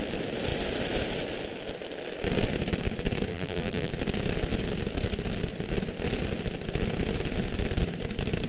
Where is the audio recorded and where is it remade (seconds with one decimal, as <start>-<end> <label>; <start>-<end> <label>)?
0.0-3.3 recorded; 3.3-3.9 remade; 3.9-8.5 recorded